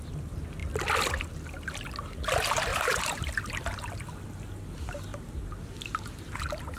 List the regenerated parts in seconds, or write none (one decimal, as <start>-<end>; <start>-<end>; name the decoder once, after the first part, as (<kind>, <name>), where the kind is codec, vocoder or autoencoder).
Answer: 2.7-3.3 (vocoder, BigVGAN v2); 5.1-6.8